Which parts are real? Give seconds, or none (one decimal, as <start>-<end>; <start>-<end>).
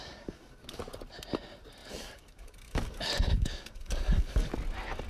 0.8-1.8; 4.5-5.1